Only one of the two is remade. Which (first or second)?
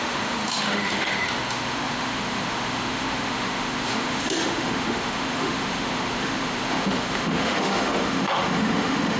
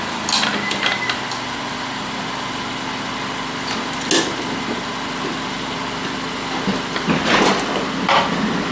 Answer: first